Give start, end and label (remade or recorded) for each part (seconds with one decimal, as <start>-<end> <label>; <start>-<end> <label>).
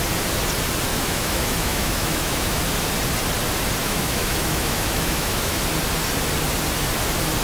0.0-0.9 recorded; 0.9-2.6 remade; 2.6-3.8 recorded; 3.8-5.6 remade; 5.6-7.4 recorded